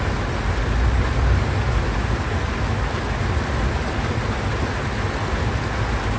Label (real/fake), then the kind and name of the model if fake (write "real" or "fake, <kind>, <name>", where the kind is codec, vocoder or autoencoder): real